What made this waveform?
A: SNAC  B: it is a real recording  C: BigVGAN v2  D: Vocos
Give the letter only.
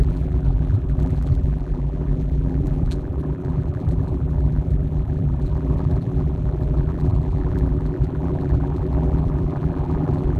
C